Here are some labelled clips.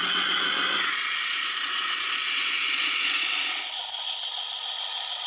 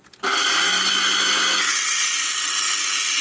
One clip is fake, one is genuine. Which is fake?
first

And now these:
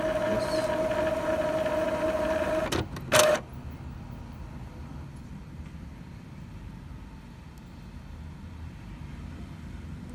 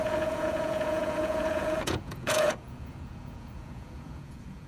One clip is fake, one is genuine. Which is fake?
second